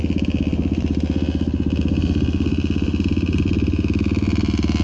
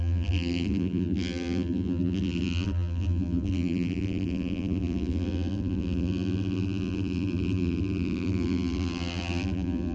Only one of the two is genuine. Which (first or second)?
first